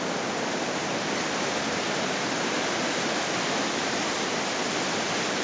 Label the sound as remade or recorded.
recorded